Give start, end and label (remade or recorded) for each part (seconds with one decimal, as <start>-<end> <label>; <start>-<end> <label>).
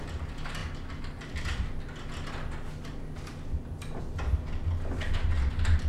0.0-5.9 recorded